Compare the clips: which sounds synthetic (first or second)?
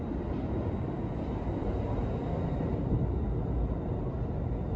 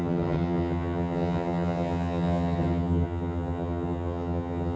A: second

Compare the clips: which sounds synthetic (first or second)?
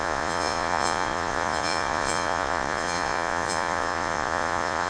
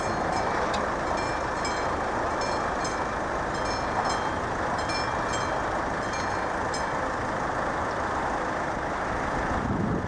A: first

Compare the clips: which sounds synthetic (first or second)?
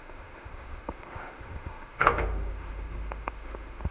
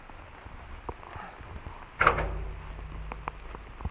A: first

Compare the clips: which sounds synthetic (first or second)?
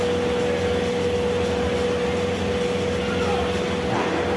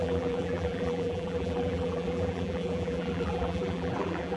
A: second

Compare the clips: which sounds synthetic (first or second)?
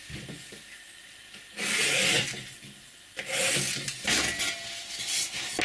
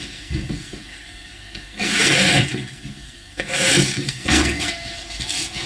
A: second